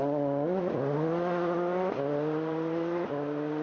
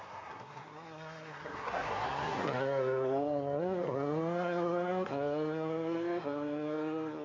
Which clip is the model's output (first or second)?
second